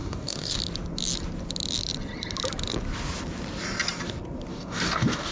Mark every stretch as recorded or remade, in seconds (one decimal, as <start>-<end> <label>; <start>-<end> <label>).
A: 0.0-0.6 remade; 0.6-4.5 recorded; 4.5-5.3 remade